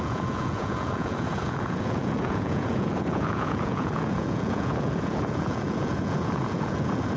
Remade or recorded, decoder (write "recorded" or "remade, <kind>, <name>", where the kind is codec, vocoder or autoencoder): remade, vocoder, Vocos